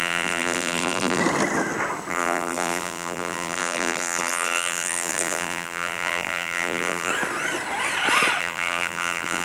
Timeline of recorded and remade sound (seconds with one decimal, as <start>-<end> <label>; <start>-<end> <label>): 0.0-1.2 remade; 1.2-2.1 recorded; 2.1-7.1 remade; 7.1-8.4 recorded; 8.4-9.4 remade